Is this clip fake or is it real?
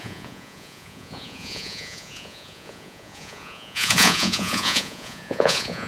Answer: fake